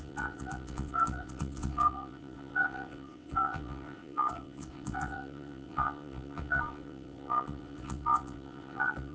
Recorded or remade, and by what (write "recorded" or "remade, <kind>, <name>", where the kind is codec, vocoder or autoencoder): remade, vocoder, WaveNeXt